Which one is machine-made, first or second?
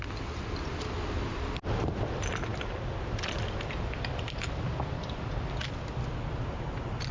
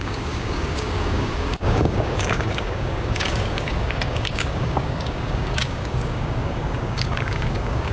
second